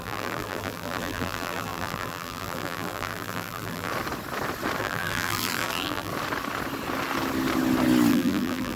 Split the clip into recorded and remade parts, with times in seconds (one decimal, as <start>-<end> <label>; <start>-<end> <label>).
0.0-3.9 remade; 3.9-4.8 recorded; 4.8-6.1 remade; 6.1-8.1 recorded; 8.1-8.8 remade